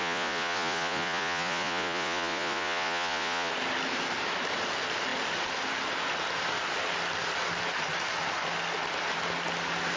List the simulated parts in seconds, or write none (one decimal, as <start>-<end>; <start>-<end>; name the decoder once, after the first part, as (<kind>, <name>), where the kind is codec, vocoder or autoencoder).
0.0-3.5 (vocoder, Vocos)